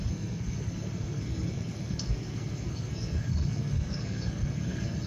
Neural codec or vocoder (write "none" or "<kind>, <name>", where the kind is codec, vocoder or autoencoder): codec, SNAC